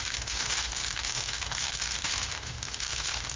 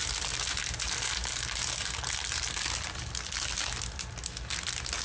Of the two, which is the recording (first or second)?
second